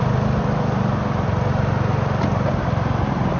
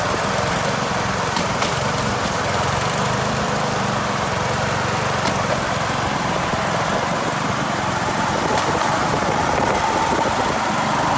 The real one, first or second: first